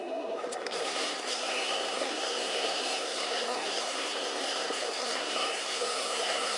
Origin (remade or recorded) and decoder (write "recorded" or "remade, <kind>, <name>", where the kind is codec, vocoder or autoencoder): remade, codec, SNAC